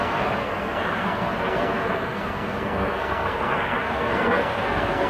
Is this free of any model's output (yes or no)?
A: no